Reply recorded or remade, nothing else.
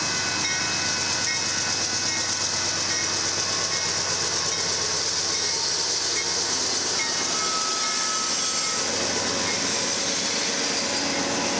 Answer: recorded